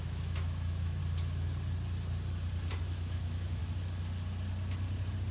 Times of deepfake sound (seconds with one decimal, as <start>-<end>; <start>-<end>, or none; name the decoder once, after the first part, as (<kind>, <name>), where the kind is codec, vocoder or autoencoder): 0.0-1.0 (autoencoder, DAC-VAE); 2.8-3.6